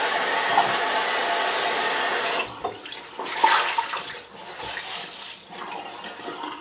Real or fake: real